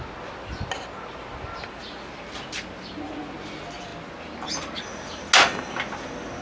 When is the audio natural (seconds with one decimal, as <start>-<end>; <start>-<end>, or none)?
0.0-6.4